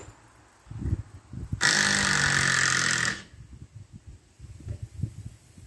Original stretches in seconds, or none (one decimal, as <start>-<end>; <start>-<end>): 0.0-5.7